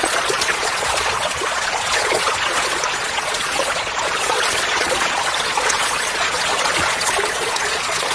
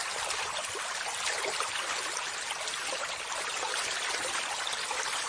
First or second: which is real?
second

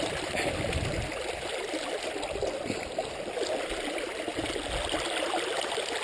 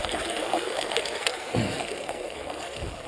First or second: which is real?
first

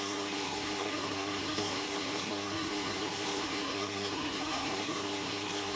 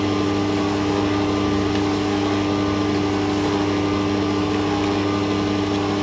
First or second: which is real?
second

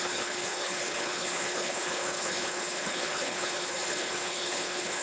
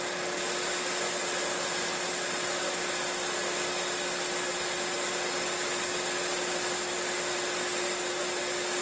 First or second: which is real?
second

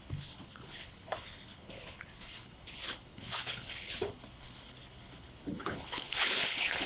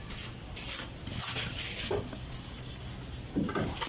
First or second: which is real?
second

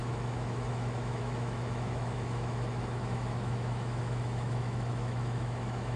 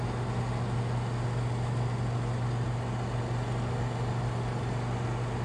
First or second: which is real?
second